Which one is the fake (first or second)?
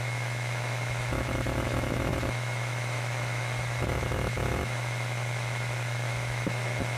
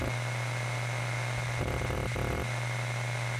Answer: first